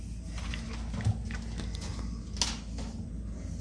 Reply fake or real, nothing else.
real